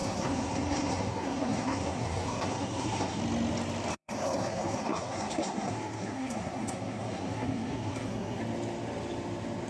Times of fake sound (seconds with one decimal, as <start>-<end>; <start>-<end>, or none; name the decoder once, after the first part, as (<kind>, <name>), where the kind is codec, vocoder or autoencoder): 0.0-3.2 (codec, SNAC); 3.9-8.4

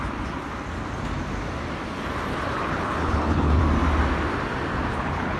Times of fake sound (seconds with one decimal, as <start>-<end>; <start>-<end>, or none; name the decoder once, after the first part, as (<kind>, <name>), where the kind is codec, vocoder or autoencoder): 2.3-3.6 (codec, HILCodec); 4.9-5.4

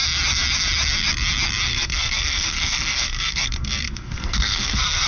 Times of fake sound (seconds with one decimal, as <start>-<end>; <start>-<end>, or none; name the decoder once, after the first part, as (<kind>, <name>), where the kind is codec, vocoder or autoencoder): 1.7-5.1 (codec, SNAC)

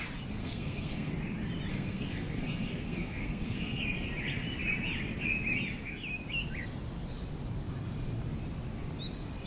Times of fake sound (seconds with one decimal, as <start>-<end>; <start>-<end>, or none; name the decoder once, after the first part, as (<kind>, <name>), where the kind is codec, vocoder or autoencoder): 0.4-1.1 (codec, SNAC); 1.7-3.8

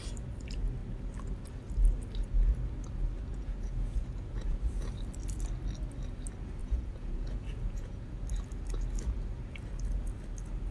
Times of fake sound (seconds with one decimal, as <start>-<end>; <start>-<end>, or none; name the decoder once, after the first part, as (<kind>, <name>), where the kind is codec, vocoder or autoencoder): 3.3-4.6 (vocoder, Vocos); 6.6-8.2

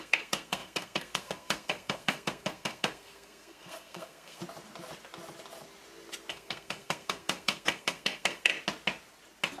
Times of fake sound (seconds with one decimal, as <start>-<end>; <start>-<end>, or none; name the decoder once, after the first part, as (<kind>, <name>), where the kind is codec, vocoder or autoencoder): 0.0-4.4 (codec, SNAC); 6.3-8.5